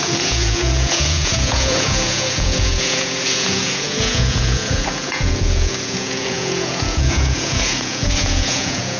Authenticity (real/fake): fake